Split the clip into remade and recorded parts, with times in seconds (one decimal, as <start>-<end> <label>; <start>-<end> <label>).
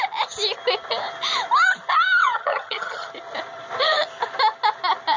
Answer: 0.0-2.2 recorded; 2.2-3.1 remade; 3.1-5.2 recorded